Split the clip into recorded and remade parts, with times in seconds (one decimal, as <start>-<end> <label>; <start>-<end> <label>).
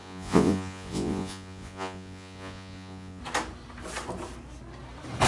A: 0.0-3.2 remade; 3.2-5.3 recorded